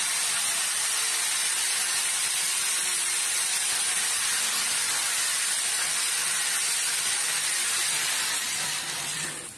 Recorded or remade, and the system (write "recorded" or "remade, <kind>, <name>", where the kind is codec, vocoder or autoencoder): recorded